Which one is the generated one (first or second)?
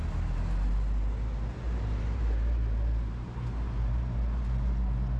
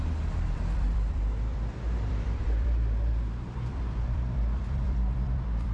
second